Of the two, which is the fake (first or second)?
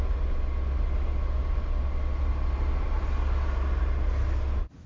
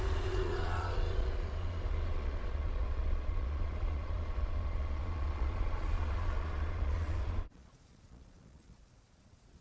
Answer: second